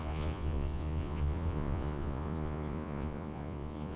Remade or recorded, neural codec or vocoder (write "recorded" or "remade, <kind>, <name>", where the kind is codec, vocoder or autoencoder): remade, vocoder, Vocos